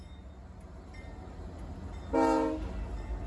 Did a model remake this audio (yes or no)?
no